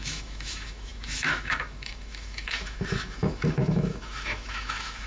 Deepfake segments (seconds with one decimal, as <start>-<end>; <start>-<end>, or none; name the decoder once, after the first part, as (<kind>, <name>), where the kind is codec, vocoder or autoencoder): 0.0-5.1 (autoencoder, DAC-VAE)